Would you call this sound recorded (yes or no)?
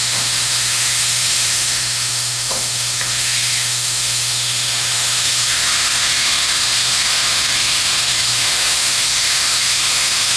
no